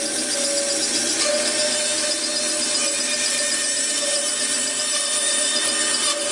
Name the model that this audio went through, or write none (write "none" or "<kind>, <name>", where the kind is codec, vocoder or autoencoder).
none